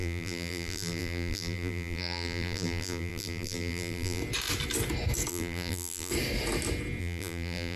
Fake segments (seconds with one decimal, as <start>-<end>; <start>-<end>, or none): 0.0-4.2; 5.3-6.1; 7.0-7.8